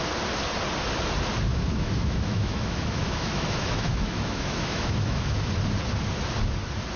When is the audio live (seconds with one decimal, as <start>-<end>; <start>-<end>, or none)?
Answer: 0.0-1.5; 5.5-7.0